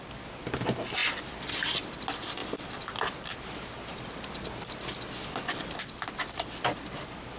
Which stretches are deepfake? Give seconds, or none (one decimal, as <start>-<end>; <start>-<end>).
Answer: 1.0-2.0